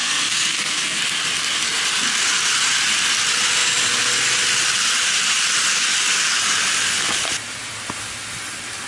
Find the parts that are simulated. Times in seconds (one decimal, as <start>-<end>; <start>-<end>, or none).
0.0-1.0